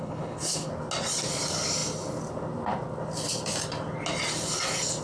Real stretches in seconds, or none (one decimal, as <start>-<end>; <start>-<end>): 0.7-5.0